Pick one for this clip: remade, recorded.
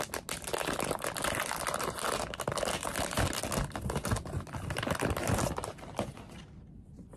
recorded